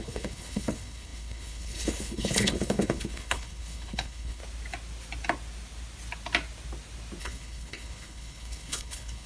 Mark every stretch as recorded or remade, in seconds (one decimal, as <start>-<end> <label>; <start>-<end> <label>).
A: 0.0-4.4 remade; 4.4-7.2 recorded; 7.2-9.3 remade